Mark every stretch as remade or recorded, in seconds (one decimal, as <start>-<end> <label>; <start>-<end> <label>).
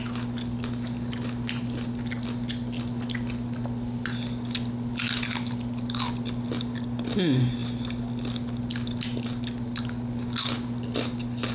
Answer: 0.0-11.5 recorded